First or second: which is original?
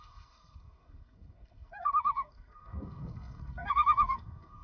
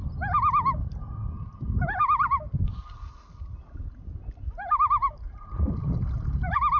second